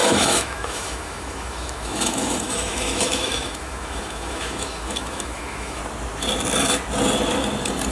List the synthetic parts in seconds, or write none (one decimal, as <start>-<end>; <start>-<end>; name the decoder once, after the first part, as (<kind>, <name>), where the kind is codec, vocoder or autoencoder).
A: 0.0-5.8 (autoencoder, DAC-VAE)

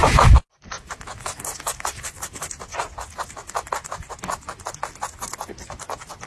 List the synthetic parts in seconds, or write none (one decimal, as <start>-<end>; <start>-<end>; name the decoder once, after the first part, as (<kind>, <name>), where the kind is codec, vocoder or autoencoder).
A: none

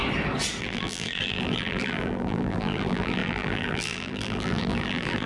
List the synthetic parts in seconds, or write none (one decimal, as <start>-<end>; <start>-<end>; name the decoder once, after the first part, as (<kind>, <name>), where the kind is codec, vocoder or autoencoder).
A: 0.6-5.3 (vocoder, BigVGAN v2)

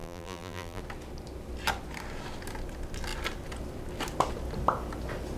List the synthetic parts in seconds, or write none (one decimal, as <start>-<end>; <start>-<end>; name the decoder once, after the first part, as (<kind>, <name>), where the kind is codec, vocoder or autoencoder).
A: 0.0-0.8 (vocoder, BigVGAN v2)

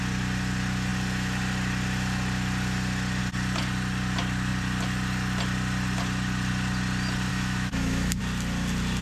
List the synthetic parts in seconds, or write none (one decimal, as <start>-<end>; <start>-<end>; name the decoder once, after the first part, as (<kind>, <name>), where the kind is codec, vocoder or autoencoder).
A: 7.3-8.2 (autoencoder, DAC-VAE)

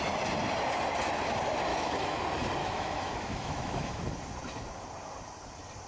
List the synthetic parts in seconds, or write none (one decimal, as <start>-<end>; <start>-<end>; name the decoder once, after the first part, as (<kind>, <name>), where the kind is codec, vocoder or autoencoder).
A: 1.7-2.2 (autoencoder, DAC-VAE); 2.6-4.0

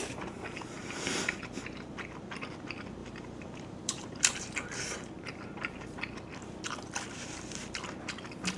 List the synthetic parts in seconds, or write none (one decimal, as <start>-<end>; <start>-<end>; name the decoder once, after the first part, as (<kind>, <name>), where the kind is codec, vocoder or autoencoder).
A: 3.0-4.4 (vocoder, BigVGAN v2)

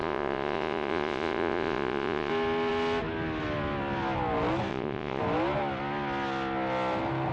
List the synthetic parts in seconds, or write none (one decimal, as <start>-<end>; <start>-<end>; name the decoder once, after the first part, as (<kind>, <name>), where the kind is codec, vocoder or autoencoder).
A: 0.0-2.3 (vocoder, Vocos); 4.7-5.2